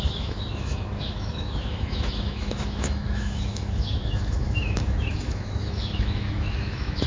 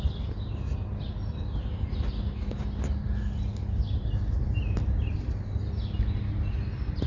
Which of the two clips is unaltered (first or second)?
second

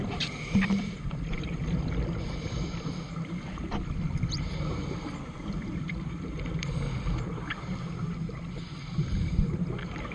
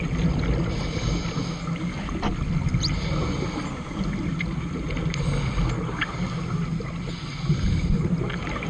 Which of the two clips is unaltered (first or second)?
second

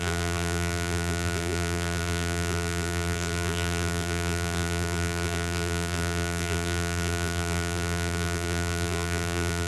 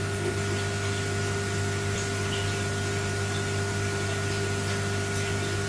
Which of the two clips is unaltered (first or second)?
second